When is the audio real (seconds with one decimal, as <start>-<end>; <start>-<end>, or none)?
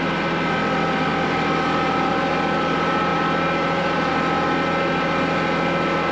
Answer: 0.0-6.1